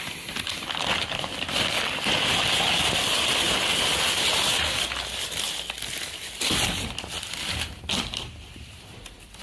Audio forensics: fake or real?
real